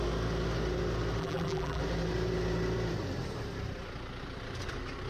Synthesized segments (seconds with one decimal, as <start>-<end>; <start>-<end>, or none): 1.2-1.8